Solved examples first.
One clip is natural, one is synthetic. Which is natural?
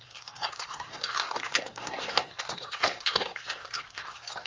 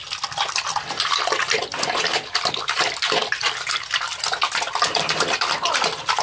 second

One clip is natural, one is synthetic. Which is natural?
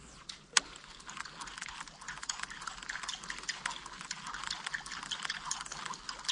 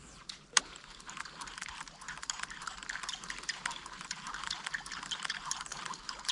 first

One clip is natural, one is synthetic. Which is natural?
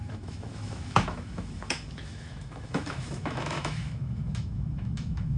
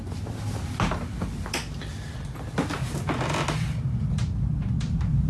second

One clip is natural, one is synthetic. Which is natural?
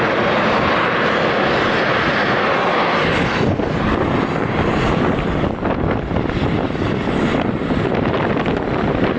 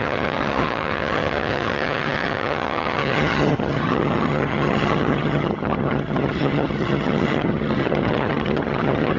first